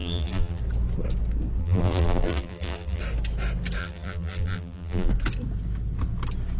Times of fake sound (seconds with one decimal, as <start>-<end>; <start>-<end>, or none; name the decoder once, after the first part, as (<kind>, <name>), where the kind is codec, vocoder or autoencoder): 0.0-0.6 (vocoder, BigVGAN v2); 1.6-3.0; 3.8-5.1